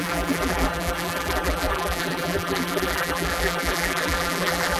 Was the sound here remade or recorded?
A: remade